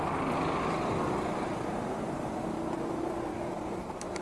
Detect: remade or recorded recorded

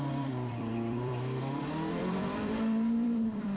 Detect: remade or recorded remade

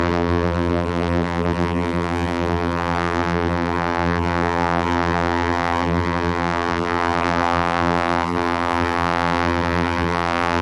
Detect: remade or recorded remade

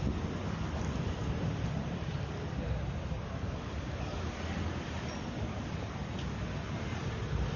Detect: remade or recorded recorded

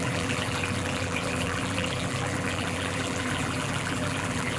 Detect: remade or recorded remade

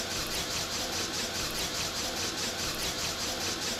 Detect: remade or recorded recorded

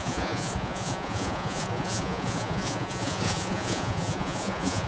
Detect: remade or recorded remade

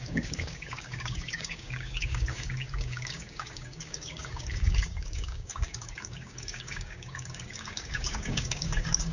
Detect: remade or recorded remade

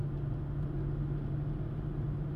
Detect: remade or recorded recorded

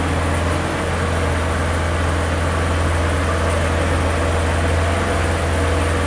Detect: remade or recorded recorded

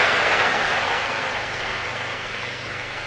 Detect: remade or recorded remade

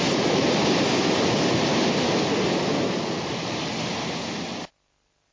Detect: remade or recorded recorded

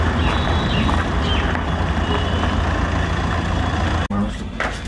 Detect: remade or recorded recorded